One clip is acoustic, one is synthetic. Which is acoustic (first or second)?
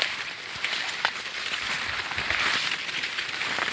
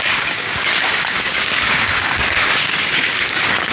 first